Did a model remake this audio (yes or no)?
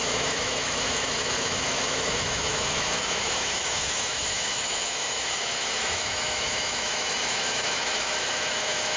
yes